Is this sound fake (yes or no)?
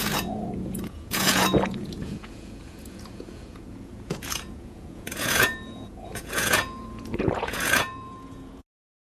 yes